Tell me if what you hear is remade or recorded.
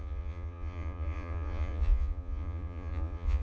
remade